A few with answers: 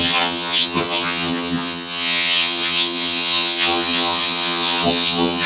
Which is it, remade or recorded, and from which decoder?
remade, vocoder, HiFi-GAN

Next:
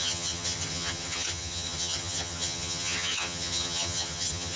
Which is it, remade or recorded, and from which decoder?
remade, vocoder, HiFi-GAN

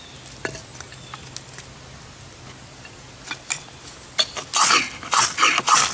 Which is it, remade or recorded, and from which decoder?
recorded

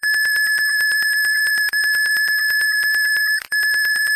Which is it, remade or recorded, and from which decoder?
remade, vocoder, BigVGAN v2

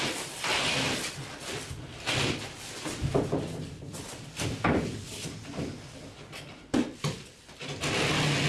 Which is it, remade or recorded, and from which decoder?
recorded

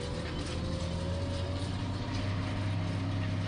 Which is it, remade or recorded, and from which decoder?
recorded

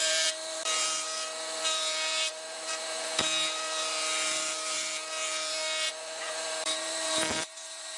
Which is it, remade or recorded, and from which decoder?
remade, vocoder, BigVGAN v2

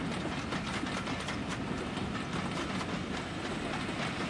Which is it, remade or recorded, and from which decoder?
recorded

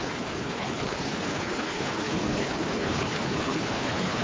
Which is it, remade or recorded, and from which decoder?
remade, codec, HILCodec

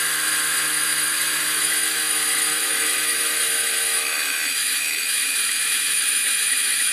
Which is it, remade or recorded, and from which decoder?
remade, autoencoder, DAC-VAE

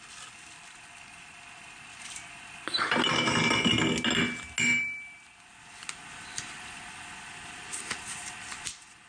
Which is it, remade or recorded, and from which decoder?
recorded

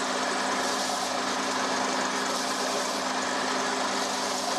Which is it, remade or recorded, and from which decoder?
recorded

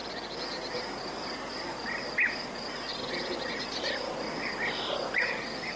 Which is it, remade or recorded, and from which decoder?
recorded